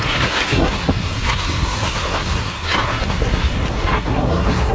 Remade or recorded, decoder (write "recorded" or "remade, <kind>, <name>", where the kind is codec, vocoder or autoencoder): remade, codec, SNAC